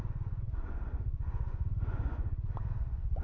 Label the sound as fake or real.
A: fake